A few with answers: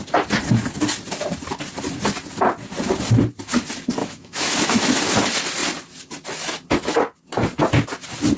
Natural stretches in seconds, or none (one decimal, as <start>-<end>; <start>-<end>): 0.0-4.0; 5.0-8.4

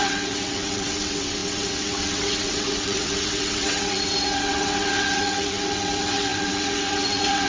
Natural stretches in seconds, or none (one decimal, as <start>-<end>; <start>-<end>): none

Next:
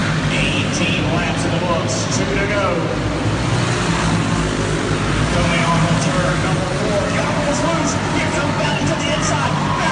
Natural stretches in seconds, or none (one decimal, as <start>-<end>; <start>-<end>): 0.0-9.9

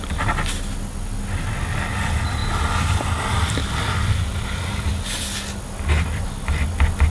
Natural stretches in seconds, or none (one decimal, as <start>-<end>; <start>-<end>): 0.0-7.1

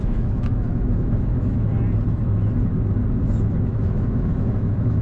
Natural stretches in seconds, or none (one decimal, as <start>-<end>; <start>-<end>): 1.7-3.6